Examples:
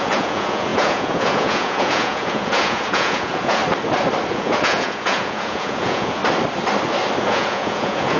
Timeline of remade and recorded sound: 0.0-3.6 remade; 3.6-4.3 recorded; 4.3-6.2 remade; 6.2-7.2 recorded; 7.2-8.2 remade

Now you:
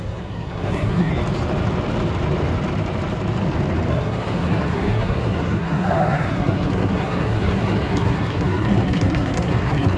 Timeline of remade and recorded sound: 0.0-1.1 remade; 1.1-3.9 recorded; 3.9-10.0 remade

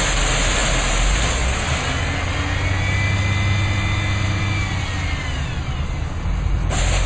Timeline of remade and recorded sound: 0.0-7.1 recorded

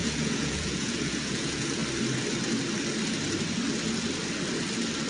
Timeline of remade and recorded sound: 0.0-1.8 remade; 1.8-5.1 recorded

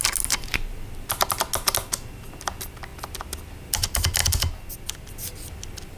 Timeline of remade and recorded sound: 0.0-6.0 recorded

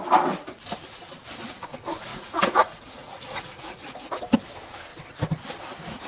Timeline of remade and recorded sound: 0.0-2.1 recorded; 2.1-4.2 remade; 4.2-6.1 recorded

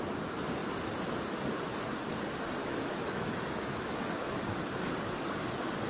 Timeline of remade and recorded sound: 0.0-2.6 recorded; 2.6-4.4 remade; 4.4-5.9 recorded